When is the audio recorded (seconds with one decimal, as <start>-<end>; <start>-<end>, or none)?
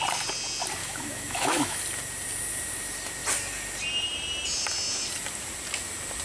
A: 0.0-0.8; 1.8-6.2